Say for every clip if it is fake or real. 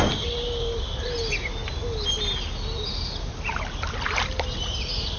real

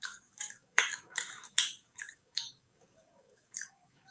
fake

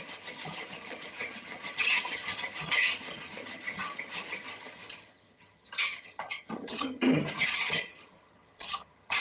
fake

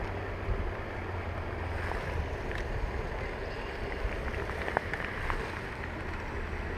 real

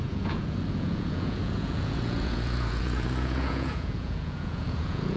fake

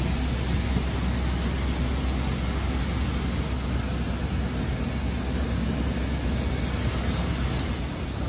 real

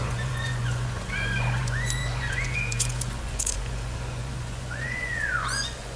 fake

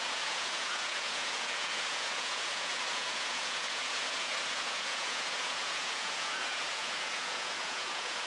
fake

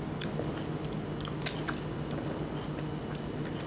real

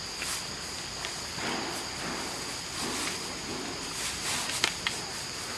real